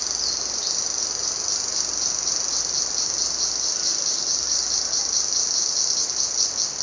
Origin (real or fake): real